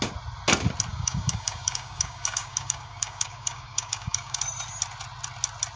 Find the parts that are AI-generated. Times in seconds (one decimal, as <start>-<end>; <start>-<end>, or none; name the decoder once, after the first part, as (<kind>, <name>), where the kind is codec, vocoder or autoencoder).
0.9-4.4 (codec, DAC)